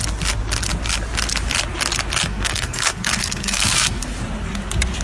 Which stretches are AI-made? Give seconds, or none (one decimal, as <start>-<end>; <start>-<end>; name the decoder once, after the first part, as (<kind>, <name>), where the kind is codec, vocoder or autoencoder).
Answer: 2.3-4.0 (codec, SNAC)